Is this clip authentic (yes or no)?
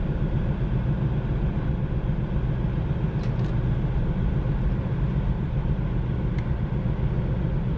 yes